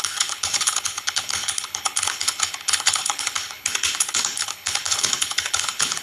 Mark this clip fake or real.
fake